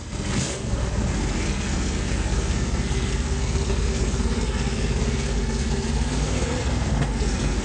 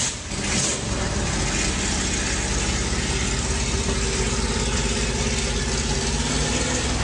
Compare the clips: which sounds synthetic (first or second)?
first